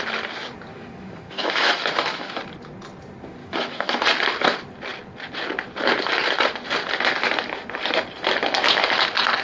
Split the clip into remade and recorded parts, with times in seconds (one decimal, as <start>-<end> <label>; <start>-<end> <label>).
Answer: 0.0-0.7 recorded; 0.7-2.4 remade; 2.4-3.4 recorded; 3.4-4.0 remade; 4.0-9.4 recorded